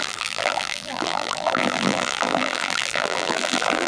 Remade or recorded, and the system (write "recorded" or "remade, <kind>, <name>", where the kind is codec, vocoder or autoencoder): remade, vocoder, BigVGAN v2